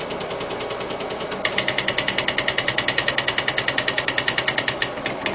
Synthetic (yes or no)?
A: no